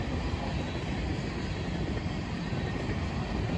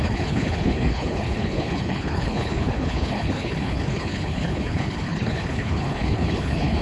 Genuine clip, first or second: first